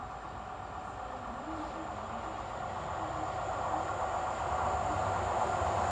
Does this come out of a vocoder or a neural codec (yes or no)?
no